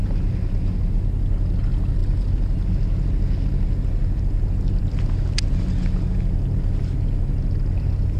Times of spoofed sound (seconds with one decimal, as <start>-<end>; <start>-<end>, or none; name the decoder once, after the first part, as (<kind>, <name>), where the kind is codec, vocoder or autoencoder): none